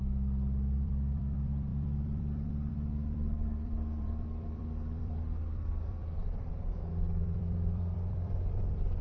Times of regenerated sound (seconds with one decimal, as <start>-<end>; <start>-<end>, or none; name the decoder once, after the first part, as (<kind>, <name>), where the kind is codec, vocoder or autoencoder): 0.0-9.0 (vocoder, BigVGAN v2)